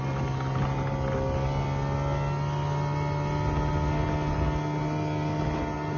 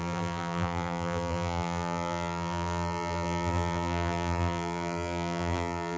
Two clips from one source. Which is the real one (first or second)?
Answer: first